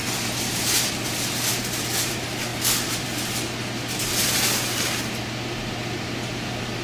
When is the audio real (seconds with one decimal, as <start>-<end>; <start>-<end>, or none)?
0.0-6.8